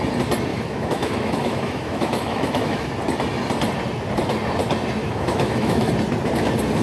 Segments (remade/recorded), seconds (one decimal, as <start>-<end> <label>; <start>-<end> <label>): 0.0-0.5 recorded; 0.5-2.9 remade; 2.9-5.0 recorded; 5.0-5.9 remade; 5.9-6.8 recorded